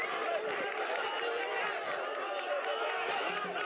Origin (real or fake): real